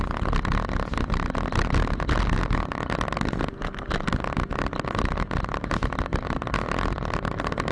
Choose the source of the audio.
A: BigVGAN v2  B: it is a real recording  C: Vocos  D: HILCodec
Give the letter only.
B